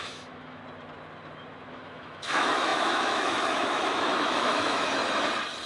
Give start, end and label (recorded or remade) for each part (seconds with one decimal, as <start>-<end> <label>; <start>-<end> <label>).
0.0-0.6 remade; 0.6-1.7 recorded; 1.7-5.0 remade; 5.0-5.7 recorded